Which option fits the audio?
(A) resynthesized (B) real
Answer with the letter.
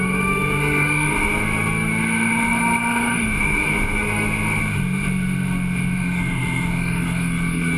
A